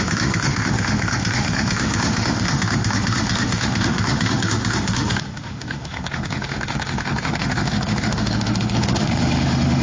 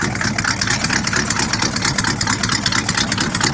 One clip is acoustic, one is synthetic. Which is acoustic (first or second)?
second